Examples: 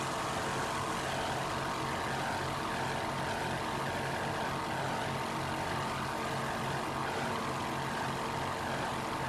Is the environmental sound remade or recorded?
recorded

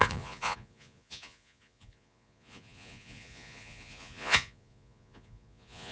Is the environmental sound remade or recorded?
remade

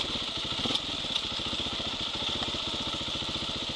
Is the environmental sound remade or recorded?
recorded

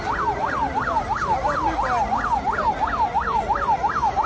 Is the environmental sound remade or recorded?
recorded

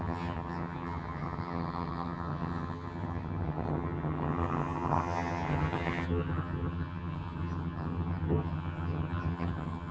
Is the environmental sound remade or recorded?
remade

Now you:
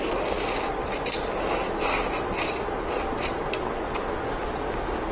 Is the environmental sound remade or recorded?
recorded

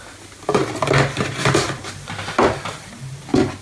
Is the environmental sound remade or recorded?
recorded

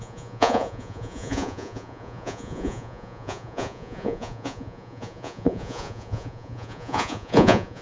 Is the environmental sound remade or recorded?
remade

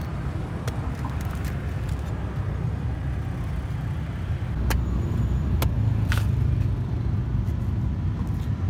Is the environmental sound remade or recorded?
recorded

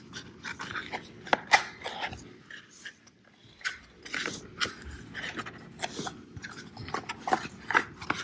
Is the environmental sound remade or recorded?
recorded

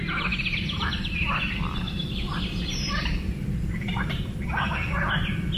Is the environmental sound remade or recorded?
remade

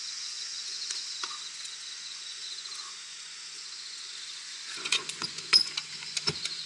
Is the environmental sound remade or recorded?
remade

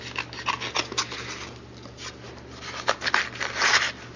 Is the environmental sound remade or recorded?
recorded